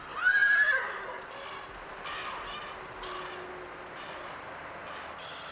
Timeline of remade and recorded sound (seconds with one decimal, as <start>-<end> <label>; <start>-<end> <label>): 0.0-5.5 recorded